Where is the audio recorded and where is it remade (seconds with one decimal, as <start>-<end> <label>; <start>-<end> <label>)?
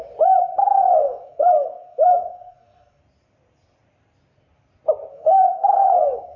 0.0-0.6 recorded; 0.6-3.0 remade; 3.0-5.1 recorded; 5.1-6.4 remade